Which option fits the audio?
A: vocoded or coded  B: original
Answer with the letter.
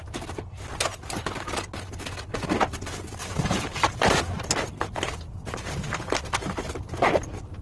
B